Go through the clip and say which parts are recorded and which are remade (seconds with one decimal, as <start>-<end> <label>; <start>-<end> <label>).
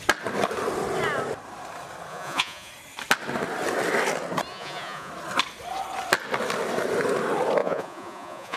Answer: 0.0-2.1 recorded; 2.1-2.7 remade; 2.7-4.5 recorded; 4.5-5.1 remade; 5.1-7.6 recorded; 7.6-8.6 remade